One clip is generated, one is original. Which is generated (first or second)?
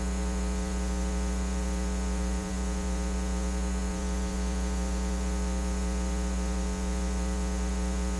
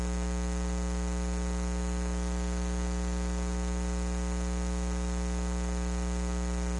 first